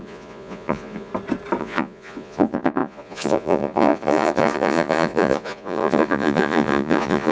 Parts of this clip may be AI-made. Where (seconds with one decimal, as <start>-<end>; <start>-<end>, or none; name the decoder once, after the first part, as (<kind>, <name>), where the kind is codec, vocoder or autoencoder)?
0.0-1.1 (vocoder, Vocos); 1.6-7.3